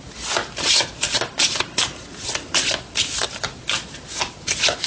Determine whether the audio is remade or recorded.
recorded